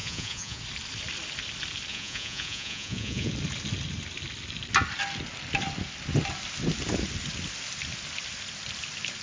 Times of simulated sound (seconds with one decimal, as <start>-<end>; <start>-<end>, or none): 0.0-0.6; 1.9-3.3